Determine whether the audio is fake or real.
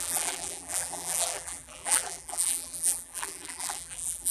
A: fake